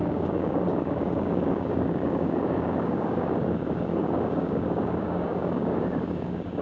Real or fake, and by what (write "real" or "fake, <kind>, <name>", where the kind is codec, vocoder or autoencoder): fake, codec, DAC